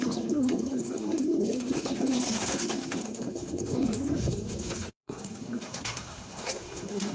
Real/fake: fake